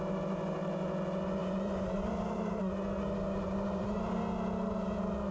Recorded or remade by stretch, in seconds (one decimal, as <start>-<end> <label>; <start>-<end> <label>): 0.0-1.4 recorded; 1.4-2.6 remade; 2.6-3.3 recorded; 3.3-4.2 remade; 4.2-5.3 recorded

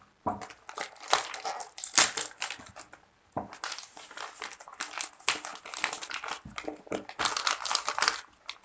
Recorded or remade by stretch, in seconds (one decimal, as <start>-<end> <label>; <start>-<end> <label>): 0.0-8.6 recorded

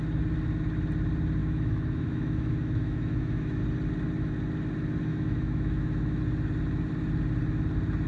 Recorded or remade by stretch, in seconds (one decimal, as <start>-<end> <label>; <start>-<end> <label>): 0.0-1.4 recorded; 1.4-3.6 remade; 3.6-5.1 recorded; 5.1-6.2 remade; 6.2-8.1 recorded

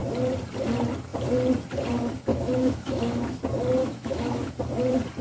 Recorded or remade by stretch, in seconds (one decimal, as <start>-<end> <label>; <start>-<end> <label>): 0.0-2.3 recorded; 2.3-3.4 remade; 3.4-3.8 recorded; 3.8-4.5 remade; 4.5-5.2 recorded

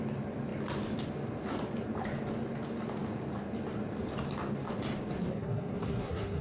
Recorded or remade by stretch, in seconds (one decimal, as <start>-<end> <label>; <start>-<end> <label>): 0.0-5.3 recorded; 5.3-6.4 remade

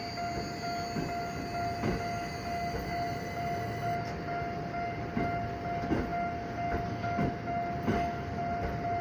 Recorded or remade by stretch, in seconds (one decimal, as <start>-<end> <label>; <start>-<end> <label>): 0.0-9.0 recorded